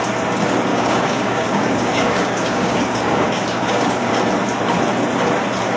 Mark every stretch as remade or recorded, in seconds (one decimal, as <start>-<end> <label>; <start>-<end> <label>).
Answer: 0.0-0.7 recorded; 0.7-4.1 remade; 4.1-5.8 recorded